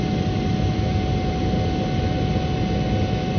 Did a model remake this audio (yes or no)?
no